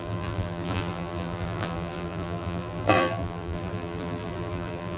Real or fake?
fake